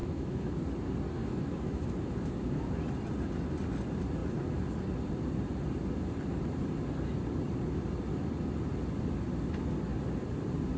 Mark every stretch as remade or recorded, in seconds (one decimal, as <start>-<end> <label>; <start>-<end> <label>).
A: 0.0-0.6 remade; 0.6-1.2 recorded; 1.2-2.7 remade; 2.7-10.8 recorded